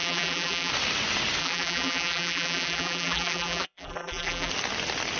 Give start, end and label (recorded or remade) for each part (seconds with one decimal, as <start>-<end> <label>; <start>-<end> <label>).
0.0-0.7 remade; 0.7-1.4 recorded; 1.4-4.5 remade; 4.5-5.2 recorded